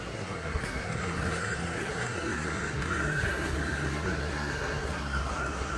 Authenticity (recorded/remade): remade